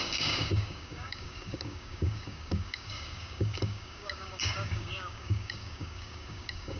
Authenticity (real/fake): fake